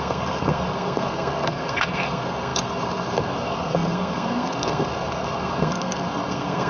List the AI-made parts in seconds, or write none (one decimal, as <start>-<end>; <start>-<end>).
0.0-6.7